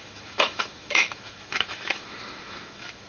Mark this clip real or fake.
fake